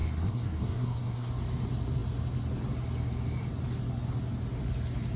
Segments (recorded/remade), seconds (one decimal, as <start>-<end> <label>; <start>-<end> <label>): 0.0-1.3 remade; 1.3-5.2 recorded